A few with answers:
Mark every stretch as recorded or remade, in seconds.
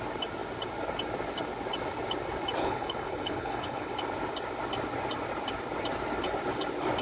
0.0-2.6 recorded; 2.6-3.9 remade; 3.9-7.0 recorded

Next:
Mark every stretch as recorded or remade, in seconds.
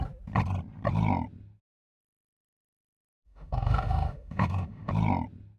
0.0-2.0 recorded; 2.0-4.9 remade; 4.9-5.6 recorded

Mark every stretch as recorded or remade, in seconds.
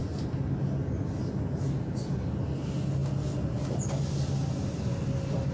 0.0-5.5 recorded